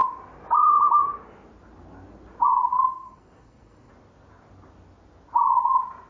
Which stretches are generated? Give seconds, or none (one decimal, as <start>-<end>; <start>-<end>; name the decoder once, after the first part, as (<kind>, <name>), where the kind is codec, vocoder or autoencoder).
2.7-3.9 (codec, SNAC)